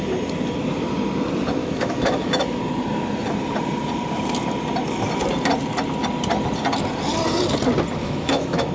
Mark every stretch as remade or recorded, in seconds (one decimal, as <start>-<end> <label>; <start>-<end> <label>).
0.0-1.6 recorded; 1.6-2.6 remade; 2.6-8.0 recorded; 8.0-8.7 remade